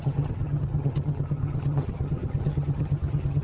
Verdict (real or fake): fake